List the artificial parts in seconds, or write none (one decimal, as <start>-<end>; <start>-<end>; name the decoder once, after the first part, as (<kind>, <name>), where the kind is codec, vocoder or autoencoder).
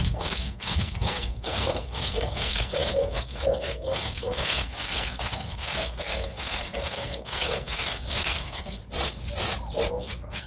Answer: 0.0-8.8 (codec, SNAC); 9.9-10.5